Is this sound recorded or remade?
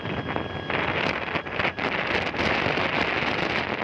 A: recorded